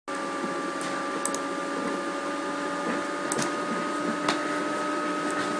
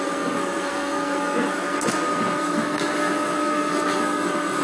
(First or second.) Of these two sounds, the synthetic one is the second